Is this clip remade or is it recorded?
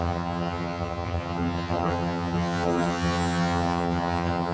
remade